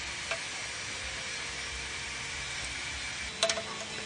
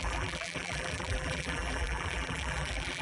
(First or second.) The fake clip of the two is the second